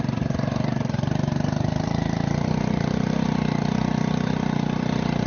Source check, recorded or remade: recorded